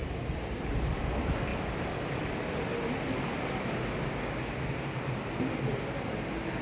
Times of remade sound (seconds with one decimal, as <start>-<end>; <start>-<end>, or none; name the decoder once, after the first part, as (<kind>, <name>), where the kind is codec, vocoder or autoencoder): 0.0-1.0 (vocoder, BigVGAN v2)